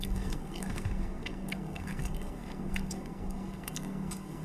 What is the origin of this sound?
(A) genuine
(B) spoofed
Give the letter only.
B